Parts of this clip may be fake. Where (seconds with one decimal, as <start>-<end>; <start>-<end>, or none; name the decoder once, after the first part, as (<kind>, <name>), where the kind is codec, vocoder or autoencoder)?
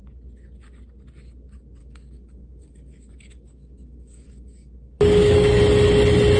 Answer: 1.8-5.6 (codec, DAC)